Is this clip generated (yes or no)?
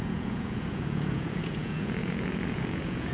yes